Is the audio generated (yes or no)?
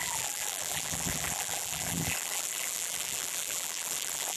yes